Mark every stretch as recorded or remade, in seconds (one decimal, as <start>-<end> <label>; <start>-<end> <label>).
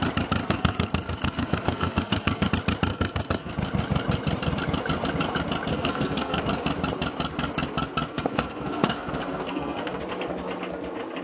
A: 0.0-0.4 recorded; 0.4-2.5 remade; 2.5-2.9 recorded; 2.9-3.5 remade; 3.5-5.7 recorded; 5.7-6.4 remade; 6.4-8.1 recorded; 8.1-10.0 remade; 10.0-11.2 recorded